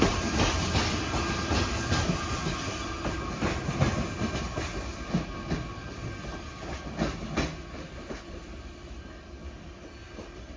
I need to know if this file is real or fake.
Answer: real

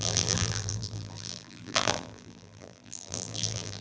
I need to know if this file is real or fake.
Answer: fake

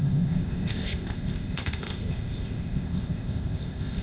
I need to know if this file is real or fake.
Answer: fake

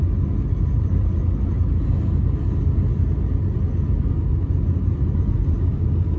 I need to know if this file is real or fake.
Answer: real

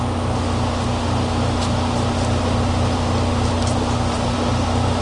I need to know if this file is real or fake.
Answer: real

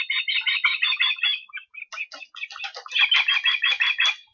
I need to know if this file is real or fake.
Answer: real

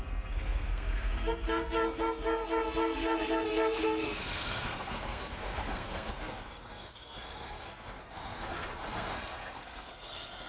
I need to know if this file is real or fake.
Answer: fake